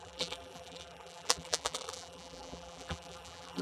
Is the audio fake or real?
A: fake